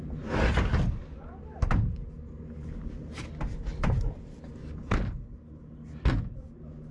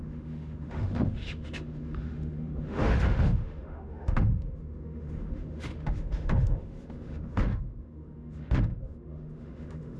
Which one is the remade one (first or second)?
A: second